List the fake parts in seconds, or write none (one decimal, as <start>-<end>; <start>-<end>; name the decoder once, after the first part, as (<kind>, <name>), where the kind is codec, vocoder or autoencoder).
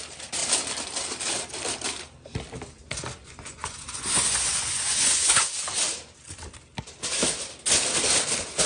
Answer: 3.2-5.4 (vocoder, Vocos)